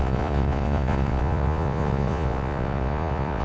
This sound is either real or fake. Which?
fake